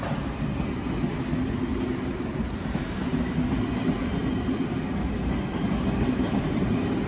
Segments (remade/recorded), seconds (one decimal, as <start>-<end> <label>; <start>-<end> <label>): 0.0-1.7 recorded; 1.7-3.3 remade; 3.3-7.1 recorded